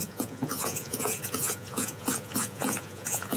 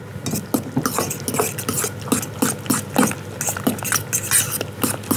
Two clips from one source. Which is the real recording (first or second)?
second